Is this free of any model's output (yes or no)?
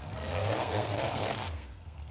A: no